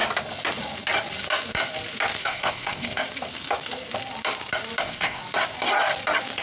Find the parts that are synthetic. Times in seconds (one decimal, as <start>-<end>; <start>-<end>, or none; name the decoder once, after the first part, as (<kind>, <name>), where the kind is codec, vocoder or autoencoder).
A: 2.2-3.0 (codec, ZipCodec); 4.8-5.2